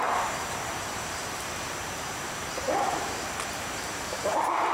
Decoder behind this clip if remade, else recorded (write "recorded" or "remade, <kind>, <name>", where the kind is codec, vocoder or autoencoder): remade, vocoder, BigVGAN v2